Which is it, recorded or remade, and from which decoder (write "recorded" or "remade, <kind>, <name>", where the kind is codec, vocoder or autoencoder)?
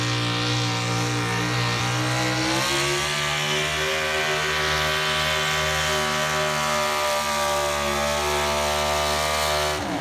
recorded